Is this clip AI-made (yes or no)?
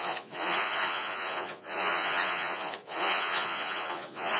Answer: yes